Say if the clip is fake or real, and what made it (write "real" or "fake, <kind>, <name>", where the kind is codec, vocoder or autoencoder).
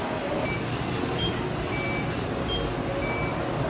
real